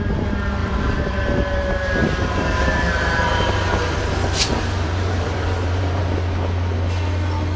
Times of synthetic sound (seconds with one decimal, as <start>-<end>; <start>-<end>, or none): 0.6-1.1; 2.0-6.0